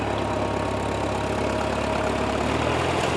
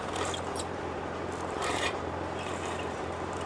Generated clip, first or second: second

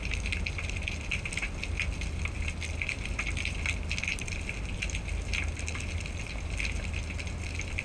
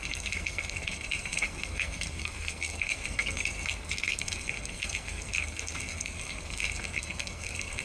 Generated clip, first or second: second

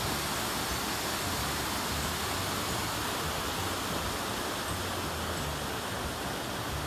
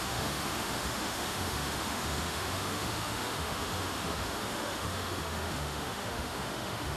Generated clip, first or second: second